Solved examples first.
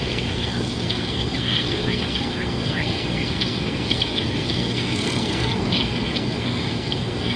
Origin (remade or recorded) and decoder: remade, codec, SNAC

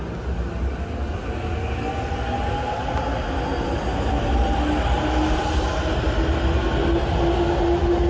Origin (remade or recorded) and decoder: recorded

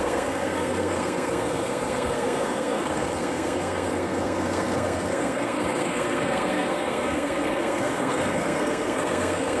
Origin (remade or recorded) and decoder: remade, codec, SNAC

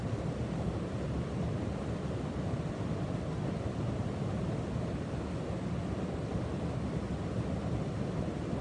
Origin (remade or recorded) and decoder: recorded